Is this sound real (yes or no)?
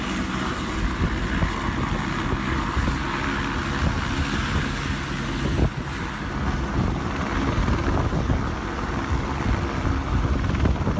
yes